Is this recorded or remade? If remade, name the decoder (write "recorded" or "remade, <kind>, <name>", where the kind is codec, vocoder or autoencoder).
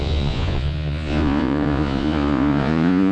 remade, vocoder, Vocos